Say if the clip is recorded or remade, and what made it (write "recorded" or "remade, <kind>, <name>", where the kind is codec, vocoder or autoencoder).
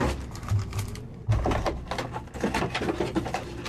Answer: recorded